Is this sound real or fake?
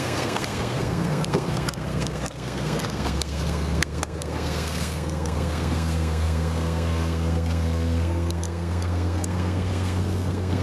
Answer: fake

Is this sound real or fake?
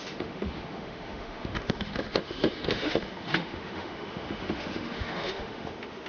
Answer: fake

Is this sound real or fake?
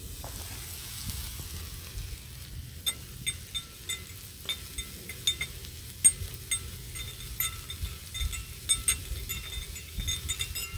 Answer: real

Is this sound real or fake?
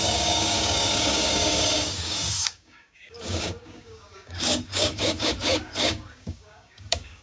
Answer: fake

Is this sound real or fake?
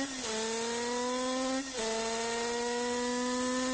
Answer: real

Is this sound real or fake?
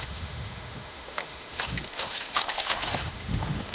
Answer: fake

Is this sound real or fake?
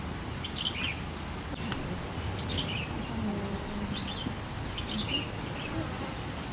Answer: real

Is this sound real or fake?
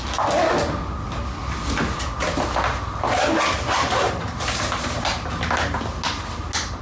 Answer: real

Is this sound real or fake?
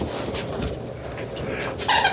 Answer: real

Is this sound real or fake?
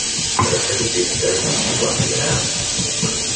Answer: real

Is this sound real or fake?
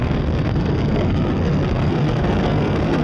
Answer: fake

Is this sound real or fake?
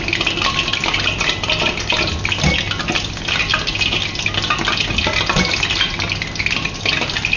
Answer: real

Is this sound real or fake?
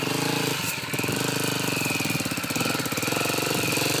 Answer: real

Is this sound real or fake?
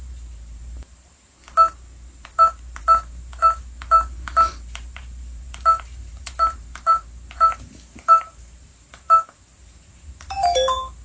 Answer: fake